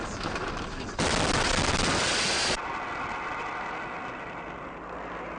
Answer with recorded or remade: recorded